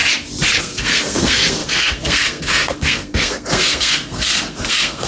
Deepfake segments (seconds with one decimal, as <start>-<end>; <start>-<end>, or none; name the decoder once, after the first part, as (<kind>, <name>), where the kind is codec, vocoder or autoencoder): 0.6-5.1 (codec, SNAC)